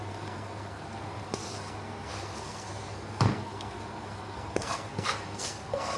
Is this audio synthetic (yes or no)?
yes